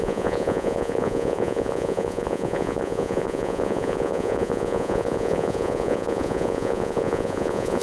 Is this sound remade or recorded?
remade